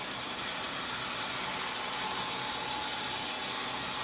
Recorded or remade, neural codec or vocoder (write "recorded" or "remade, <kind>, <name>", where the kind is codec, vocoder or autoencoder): recorded